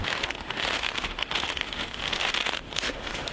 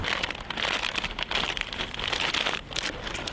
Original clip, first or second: second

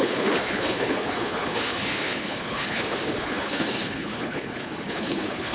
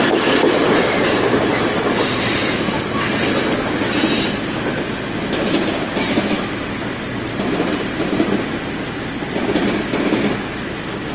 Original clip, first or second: second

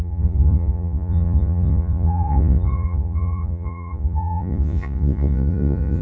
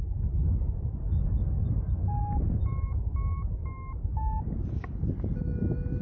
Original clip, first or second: second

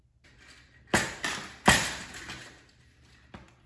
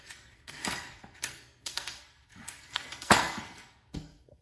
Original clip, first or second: first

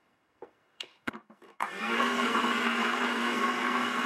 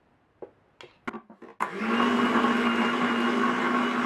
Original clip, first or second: second